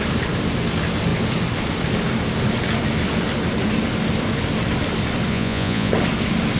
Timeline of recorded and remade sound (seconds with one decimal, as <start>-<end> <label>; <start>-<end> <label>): 0.0-5.3 recorded; 5.3-5.9 remade; 5.9-6.6 recorded